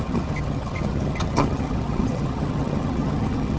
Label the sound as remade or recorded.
remade